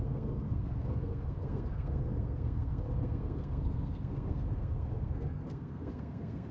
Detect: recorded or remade remade